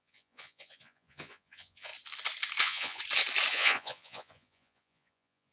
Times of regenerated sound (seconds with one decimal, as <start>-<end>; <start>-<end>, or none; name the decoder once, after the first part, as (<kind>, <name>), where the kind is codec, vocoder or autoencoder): 0.0-1.9 (vocoder, Vocos); 2.6-3.0; 3.5-5.5